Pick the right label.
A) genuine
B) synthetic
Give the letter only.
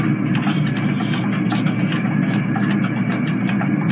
A